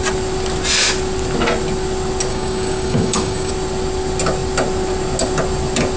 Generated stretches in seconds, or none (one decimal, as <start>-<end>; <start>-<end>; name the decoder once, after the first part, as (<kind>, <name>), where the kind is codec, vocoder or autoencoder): 2.3-3.5 (codec, DAC)